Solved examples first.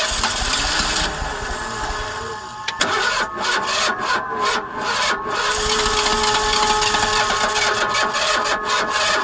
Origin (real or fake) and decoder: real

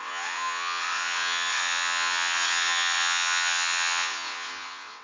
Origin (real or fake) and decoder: fake, vocoder, WaveNeXt